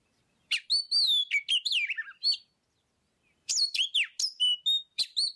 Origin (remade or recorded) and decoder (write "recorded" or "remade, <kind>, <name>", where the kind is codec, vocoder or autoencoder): recorded